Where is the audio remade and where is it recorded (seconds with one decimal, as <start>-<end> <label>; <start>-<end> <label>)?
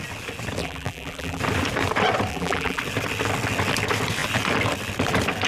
0.0-0.6 recorded; 0.6-1.4 remade; 1.4-2.3 recorded; 2.3-2.8 remade; 2.8-5.5 recorded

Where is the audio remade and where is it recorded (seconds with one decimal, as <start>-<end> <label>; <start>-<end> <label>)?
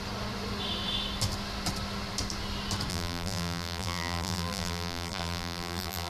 0.0-2.9 recorded; 2.9-6.1 remade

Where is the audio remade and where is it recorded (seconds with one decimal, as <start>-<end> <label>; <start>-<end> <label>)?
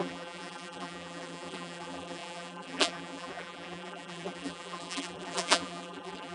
0.0-6.3 remade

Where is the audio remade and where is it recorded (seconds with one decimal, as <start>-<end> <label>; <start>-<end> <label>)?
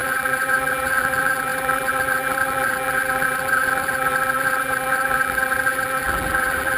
0.0-6.8 remade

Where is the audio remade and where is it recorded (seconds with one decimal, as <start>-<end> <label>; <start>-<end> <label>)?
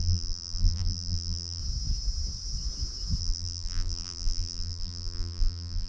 0.0-1.6 remade; 1.6-3.2 recorded; 3.2-5.9 remade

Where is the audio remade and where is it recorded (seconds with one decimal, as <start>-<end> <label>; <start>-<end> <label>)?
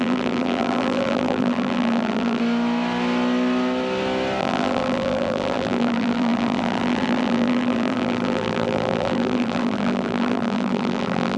0.0-2.4 remade; 2.4-4.4 recorded; 4.4-11.4 remade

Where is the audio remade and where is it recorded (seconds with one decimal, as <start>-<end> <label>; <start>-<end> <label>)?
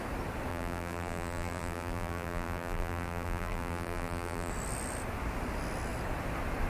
0.0-0.5 recorded; 0.5-4.5 remade; 4.5-6.7 recorded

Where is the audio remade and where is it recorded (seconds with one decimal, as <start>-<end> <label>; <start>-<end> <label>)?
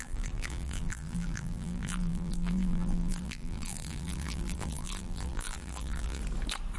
0.0-6.2 remade; 6.2-6.8 recorded